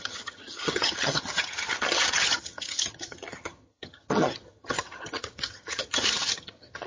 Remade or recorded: remade